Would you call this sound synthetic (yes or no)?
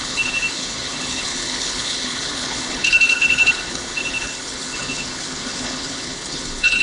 yes